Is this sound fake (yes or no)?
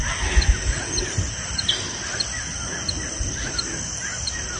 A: no